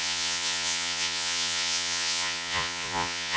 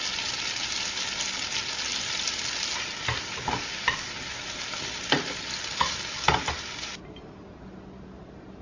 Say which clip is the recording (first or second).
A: second